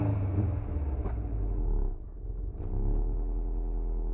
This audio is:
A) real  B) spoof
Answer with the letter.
A